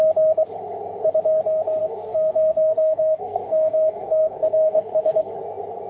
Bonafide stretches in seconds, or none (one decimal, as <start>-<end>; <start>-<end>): 0.0-1.8; 5.3-5.9